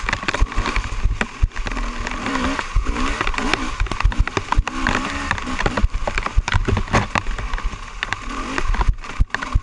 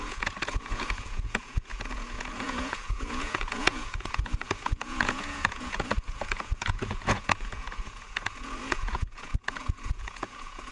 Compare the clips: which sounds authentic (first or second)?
first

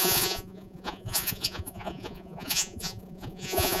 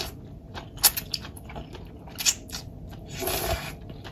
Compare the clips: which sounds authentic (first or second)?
second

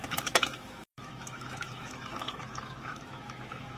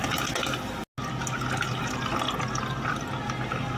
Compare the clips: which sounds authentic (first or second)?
second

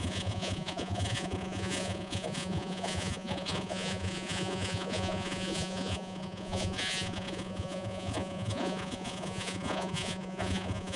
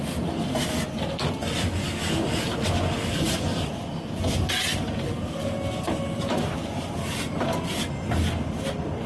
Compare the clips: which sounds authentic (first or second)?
second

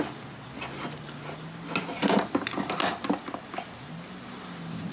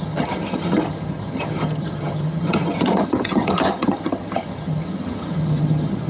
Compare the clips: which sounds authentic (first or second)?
first